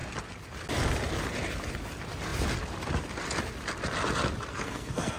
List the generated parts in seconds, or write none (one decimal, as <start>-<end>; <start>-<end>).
4.5-5.2

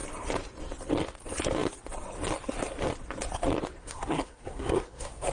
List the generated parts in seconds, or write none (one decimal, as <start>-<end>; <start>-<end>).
3.8-5.3

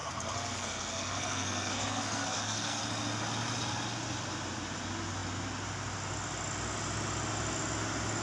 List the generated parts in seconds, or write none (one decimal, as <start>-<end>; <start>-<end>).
0.0-2.8

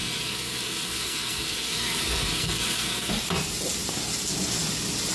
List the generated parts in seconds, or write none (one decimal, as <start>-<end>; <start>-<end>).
0.0-3.1